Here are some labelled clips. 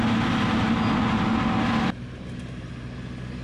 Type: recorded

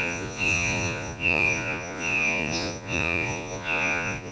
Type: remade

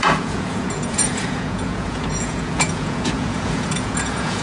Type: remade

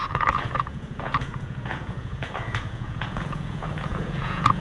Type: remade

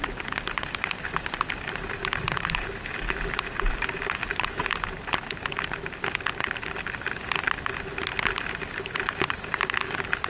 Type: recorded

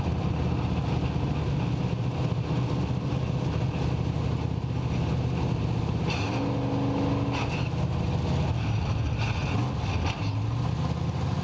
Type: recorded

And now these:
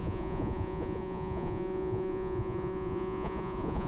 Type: remade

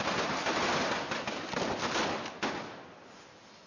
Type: recorded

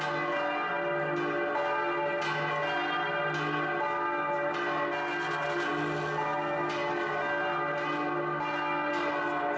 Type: recorded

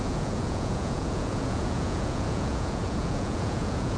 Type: remade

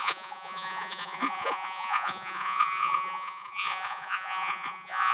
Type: remade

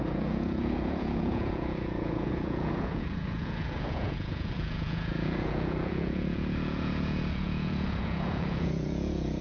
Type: remade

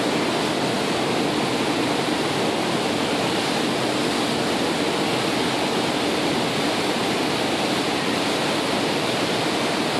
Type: recorded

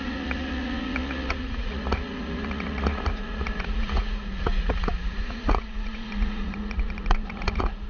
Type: remade